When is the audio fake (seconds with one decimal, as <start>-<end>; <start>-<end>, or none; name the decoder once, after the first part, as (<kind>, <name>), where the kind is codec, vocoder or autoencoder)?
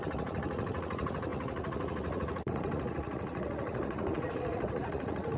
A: 0.0-5.4 (vocoder, Vocos)